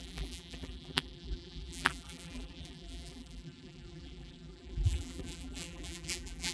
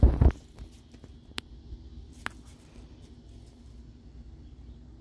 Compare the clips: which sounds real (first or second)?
second